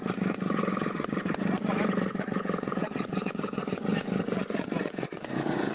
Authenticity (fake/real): fake